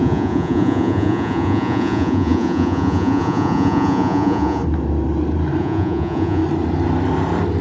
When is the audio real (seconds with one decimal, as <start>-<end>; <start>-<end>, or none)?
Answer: 4.6-5.6; 6.4-7.6